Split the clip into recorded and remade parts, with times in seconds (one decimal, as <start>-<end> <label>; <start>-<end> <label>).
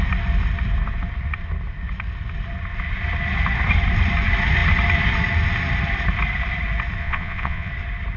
0.0-7.0 recorded; 7.0-7.7 remade; 7.7-8.2 recorded